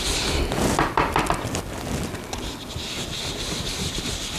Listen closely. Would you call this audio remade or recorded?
recorded